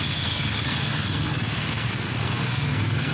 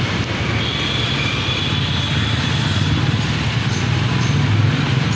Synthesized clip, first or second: first